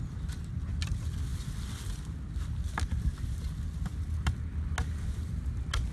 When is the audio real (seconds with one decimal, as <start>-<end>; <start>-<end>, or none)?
0.0-5.9